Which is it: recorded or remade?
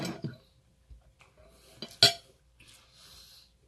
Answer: recorded